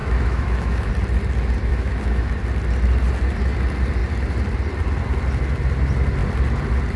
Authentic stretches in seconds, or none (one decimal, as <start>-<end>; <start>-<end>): 0.9-1.7; 2.3-7.0